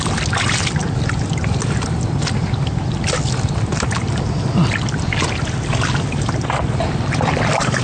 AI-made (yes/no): no